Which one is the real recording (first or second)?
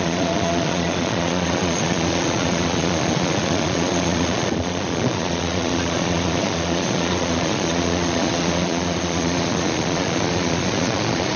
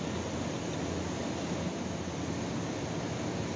second